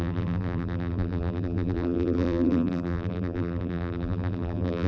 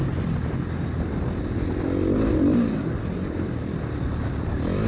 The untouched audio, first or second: second